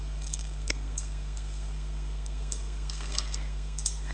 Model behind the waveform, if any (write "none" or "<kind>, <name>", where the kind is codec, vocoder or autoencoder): codec, SNAC